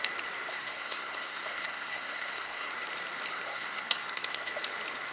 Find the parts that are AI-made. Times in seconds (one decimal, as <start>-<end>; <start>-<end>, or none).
0.5-2.7; 3.3-4.5